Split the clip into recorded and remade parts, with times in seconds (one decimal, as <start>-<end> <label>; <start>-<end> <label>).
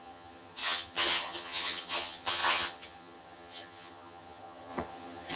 0.0-5.4 remade